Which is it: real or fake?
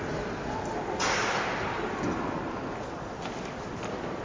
real